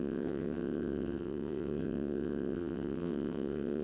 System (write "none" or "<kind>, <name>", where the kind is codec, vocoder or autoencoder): vocoder, WaveNeXt